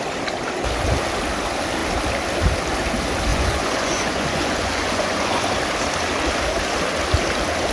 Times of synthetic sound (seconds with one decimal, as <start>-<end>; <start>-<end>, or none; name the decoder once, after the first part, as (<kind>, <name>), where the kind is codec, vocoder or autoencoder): 3.3-5.4 (vocoder, Vocos)